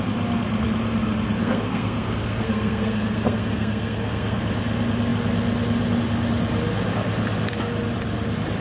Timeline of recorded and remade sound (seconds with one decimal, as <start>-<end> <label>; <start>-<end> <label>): 0.0-1.4 recorded; 1.4-4.4 remade; 4.4-8.6 recorded